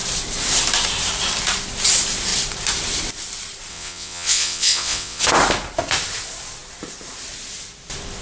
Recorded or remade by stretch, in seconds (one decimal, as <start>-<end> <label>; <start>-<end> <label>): 0.0-3.7 recorded; 3.7-5.2 remade; 5.2-8.2 recorded